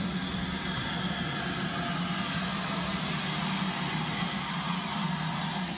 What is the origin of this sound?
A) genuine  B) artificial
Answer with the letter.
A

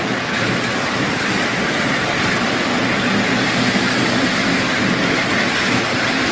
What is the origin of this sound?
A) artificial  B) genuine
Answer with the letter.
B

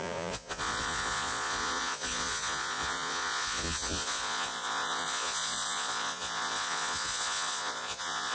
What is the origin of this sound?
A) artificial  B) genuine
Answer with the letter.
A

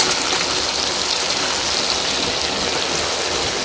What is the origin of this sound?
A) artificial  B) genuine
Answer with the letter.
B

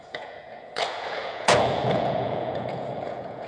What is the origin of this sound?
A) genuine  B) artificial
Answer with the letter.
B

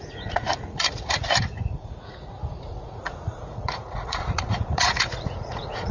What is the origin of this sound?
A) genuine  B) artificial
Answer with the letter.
B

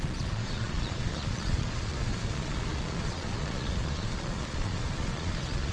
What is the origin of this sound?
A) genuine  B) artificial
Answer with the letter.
B